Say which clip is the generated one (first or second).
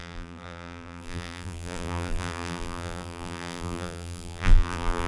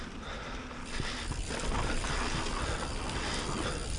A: first